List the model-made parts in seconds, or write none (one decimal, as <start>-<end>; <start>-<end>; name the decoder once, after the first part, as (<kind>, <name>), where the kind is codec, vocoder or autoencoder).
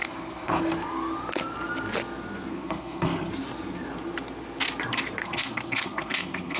0.0-0.6 (codec, SNAC); 2.5-3.3; 5.2-6.6